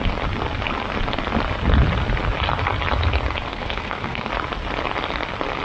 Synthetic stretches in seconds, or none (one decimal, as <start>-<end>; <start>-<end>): 3.5-4.3